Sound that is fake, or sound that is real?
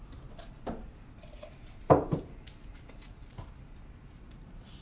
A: real